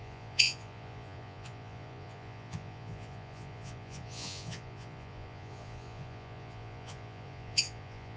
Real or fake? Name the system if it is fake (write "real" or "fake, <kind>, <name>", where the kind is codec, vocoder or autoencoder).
fake, vocoder, Vocos